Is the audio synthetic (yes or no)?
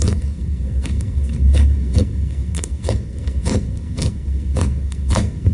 yes